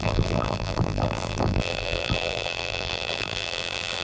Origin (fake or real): fake